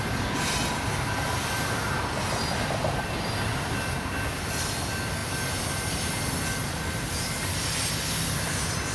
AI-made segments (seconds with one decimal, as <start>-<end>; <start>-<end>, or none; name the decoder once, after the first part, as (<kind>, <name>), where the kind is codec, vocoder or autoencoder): none